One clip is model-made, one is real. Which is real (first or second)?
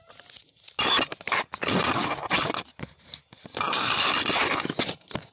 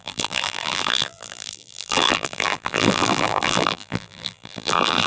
first